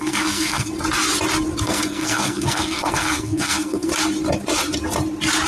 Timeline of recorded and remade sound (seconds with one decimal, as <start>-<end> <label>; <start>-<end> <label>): 0.0-0.7 remade; 0.7-1.6 recorded; 1.6-3.9 remade; 3.9-5.5 recorded